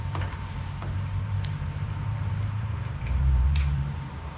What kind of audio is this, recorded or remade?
remade